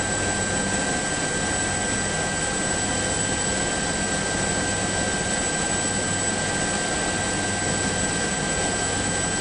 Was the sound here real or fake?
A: real